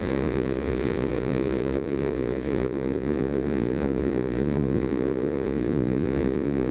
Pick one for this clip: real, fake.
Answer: fake